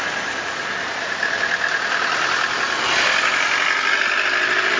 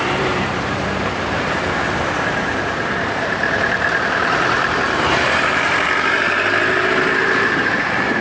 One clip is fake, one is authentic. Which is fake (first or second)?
second